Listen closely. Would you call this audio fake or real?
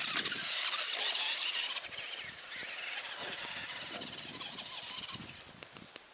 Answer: real